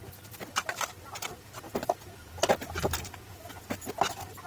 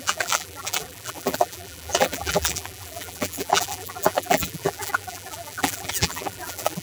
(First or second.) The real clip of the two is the first